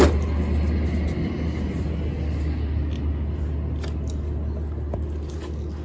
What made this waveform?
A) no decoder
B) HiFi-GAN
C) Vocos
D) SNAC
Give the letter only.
A